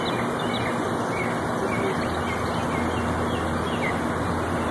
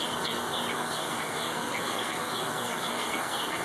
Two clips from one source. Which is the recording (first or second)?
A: first